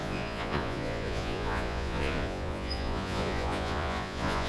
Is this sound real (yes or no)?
no